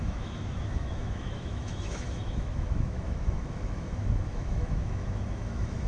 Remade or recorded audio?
remade